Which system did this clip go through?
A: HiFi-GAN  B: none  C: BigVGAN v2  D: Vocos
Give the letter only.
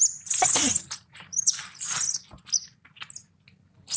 B